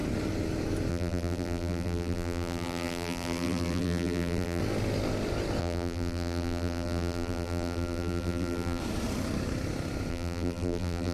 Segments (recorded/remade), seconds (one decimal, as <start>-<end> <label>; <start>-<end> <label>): 0.0-0.9 recorded; 0.9-4.6 remade; 4.6-5.6 recorded; 5.6-8.8 remade; 8.8-10.1 recorded; 10.1-11.1 remade